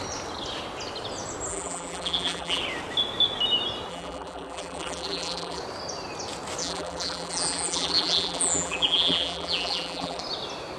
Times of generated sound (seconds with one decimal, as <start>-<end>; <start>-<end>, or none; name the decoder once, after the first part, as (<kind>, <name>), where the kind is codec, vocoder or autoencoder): 1.5-2.6 (vocoder, BigVGAN v2); 3.9-5.6; 6.6-10.2